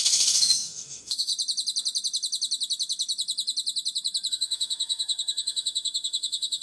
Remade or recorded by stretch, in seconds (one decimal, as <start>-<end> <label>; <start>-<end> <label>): 0.0-1.3 remade; 1.3-4.3 recorded; 4.3-6.6 remade